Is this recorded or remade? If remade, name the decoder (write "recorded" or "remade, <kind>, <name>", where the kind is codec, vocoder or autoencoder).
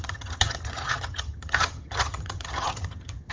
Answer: remade, vocoder, HiFi-GAN